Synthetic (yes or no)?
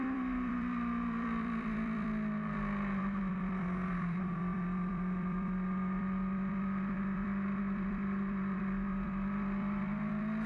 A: yes